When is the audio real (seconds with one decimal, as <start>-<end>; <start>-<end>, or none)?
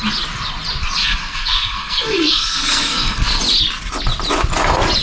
0.0-1.0; 3.4-5.0